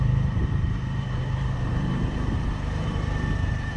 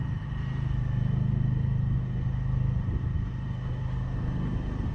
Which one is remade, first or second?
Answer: first